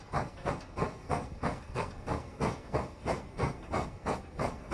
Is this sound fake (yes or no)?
yes